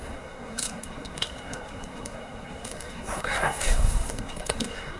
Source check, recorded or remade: remade